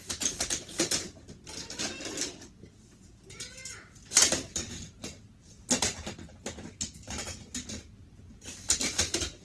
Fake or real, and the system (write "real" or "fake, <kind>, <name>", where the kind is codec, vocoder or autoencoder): real